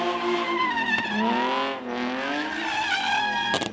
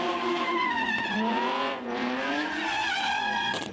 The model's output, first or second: second